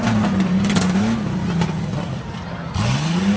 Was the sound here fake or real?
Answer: real